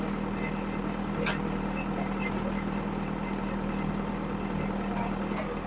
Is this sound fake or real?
real